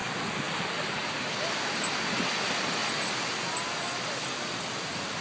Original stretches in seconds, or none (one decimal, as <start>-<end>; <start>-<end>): 0.0-5.2